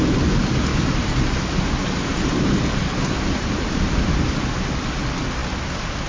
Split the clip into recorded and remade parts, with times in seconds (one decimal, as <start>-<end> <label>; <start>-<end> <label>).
0.0-0.7 recorded; 0.7-4.4 remade; 4.4-6.1 recorded